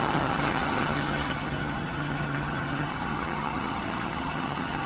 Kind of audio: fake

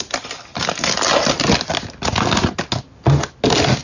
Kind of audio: real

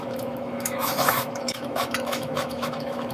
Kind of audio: fake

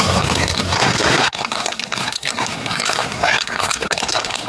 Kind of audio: fake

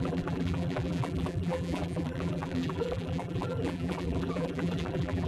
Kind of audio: fake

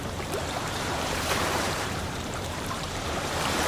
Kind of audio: fake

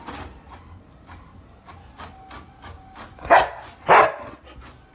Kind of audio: real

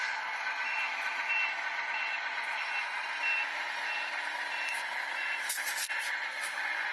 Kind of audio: real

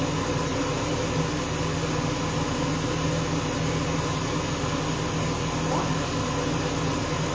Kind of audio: real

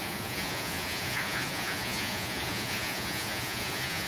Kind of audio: fake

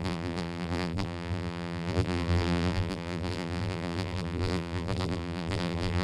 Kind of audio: fake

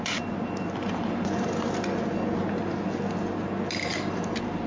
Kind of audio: real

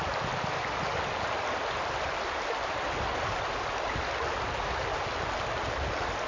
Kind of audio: real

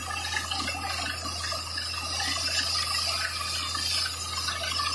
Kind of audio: real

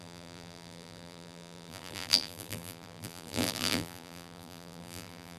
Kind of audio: fake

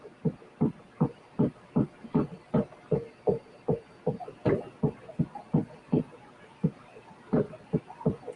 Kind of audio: fake